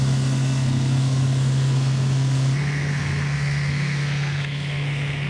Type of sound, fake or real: fake